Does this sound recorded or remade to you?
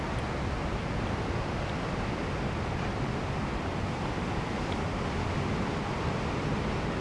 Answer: recorded